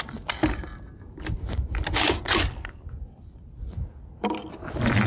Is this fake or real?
real